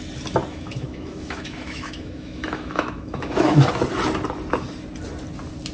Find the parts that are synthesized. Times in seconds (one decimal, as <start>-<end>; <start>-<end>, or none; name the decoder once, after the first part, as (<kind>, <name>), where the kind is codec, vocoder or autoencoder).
0.5-3.7 (autoencoder, DAC-VAE)